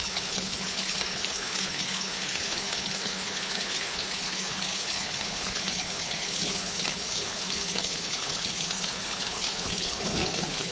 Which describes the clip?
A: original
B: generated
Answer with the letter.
B